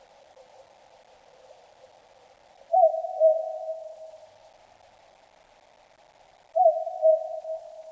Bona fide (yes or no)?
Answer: yes